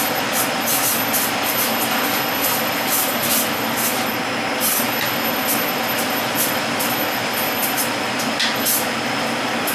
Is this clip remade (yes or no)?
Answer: no